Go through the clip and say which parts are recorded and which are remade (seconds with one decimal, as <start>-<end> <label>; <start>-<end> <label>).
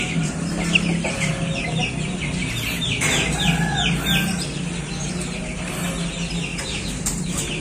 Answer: 0.0-5.4 recorded; 5.4-5.9 remade; 5.9-6.5 recorded; 6.5-7.6 remade